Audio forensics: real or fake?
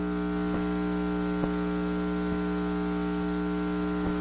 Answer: real